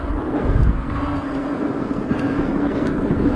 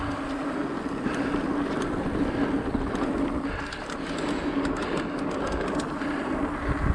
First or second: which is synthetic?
first